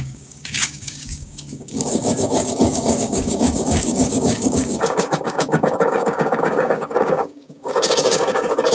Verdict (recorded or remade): remade